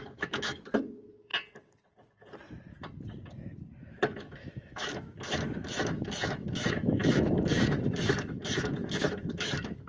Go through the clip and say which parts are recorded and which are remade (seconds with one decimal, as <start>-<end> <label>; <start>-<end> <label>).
0.0-1.3 remade; 1.3-3.8 recorded; 3.8-9.9 remade